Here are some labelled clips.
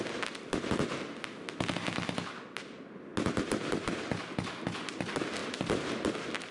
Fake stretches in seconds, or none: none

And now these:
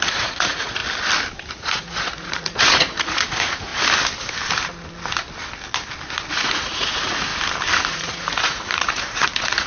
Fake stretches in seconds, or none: 0.0-0.8; 1.5-3.7; 6.3-7.3; 7.8-9.7

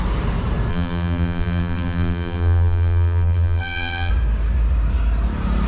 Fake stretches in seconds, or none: 0.7-4.1

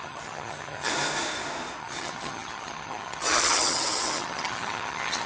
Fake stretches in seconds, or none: 0.0-0.9; 1.8-5.3

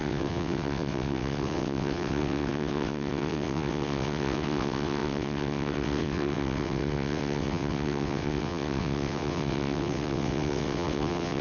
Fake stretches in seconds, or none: 0.0-11.4

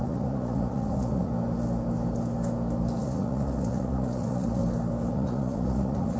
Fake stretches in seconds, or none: 0.0-1.3; 3.0-4.6; 5.1-6.2

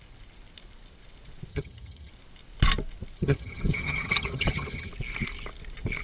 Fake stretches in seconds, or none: 1.5-2.1; 3.2-4.9